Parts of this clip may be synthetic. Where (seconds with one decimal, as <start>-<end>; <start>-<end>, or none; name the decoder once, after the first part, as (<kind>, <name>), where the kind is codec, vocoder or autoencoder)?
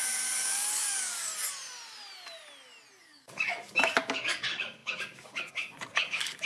0.0-1.3 (codec, DAC); 3.0-6.5